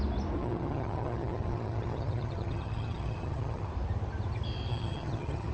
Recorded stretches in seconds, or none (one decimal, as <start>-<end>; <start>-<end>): 0.0-0.4; 3.7-4.7